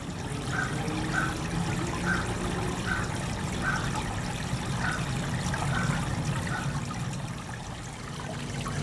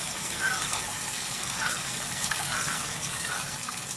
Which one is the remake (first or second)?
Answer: second